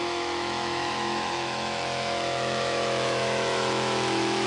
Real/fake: fake